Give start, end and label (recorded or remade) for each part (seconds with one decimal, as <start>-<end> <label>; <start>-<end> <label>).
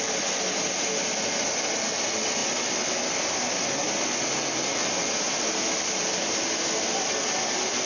0.0-7.9 remade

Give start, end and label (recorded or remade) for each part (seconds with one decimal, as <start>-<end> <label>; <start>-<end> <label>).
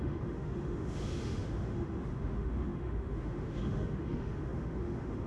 0.0-5.3 remade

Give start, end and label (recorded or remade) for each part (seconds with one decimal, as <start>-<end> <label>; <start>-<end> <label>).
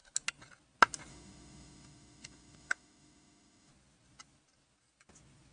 0.0-1.1 recorded; 1.1-3.7 remade; 3.7-5.5 recorded